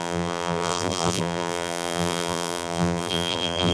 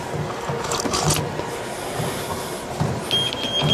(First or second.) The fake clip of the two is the first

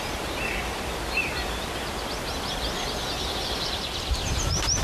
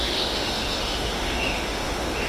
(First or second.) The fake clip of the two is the second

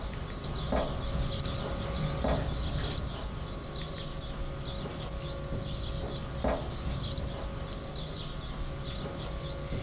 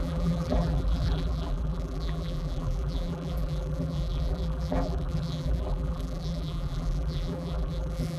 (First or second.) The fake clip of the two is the second